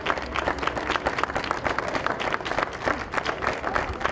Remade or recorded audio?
recorded